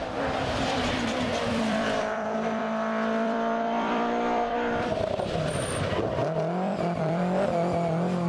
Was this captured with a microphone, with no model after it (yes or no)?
no